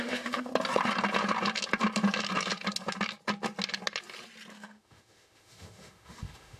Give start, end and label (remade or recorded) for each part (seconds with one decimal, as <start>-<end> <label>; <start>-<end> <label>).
0.0-0.5 remade; 0.5-4.5 recorded; 4.5-6.6 remade